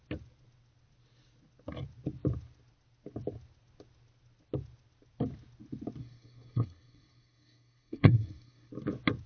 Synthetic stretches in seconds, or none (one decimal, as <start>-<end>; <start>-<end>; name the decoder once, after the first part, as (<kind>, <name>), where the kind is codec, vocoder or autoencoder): 6.0-8.7 (codec, SNAC)